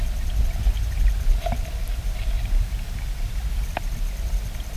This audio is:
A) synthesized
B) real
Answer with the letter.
B